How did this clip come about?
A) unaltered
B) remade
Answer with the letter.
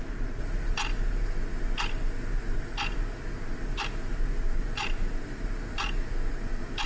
A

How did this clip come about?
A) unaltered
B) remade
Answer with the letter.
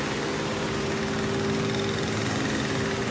A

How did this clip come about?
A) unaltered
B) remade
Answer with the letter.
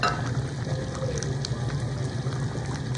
A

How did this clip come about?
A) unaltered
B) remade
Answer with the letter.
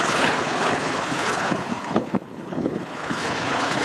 B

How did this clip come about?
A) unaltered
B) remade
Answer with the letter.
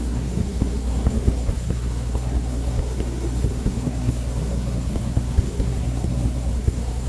B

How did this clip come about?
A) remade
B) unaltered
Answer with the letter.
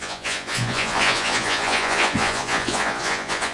A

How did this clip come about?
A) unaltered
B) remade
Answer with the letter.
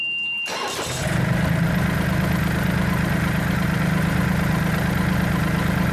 A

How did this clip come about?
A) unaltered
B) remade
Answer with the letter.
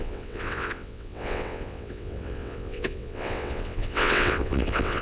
B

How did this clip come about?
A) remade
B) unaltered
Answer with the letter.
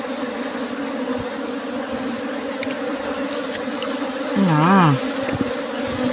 B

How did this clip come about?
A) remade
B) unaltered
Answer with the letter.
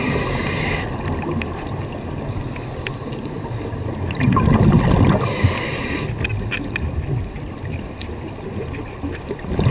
B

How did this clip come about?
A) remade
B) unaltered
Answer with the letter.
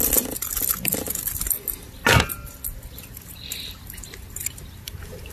B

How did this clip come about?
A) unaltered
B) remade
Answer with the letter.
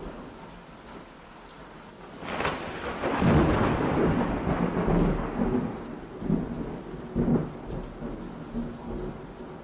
A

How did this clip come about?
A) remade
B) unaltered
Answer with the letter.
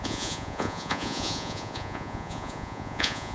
A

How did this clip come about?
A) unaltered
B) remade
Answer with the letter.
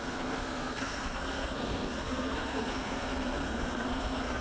B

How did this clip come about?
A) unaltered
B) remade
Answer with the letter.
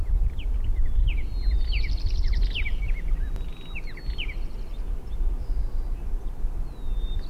A